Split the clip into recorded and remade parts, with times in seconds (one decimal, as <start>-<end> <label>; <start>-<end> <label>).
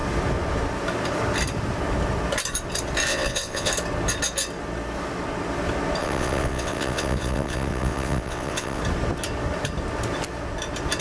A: 0.0-3.1 recorded; 3.1-3.7 remade; 3.7-6.0 recorded; 6.0-8.8 remade; 8.8-11.0 recorded